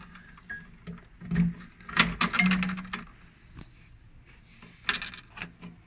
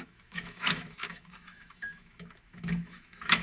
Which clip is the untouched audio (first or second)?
first